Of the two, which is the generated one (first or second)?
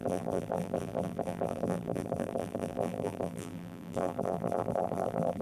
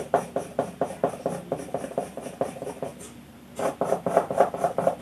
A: first